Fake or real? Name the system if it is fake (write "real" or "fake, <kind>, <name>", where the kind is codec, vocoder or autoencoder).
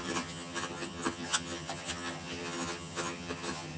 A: fake, vocoder, HiFi-GAN